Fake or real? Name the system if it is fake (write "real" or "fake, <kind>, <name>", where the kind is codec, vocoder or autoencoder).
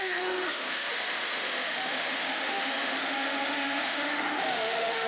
fake, autoencoder, DAC-VAE